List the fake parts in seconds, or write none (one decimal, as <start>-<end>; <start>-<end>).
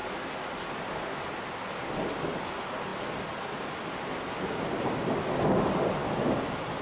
none